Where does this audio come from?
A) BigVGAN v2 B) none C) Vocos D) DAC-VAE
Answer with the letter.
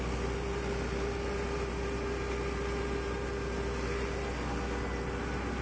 B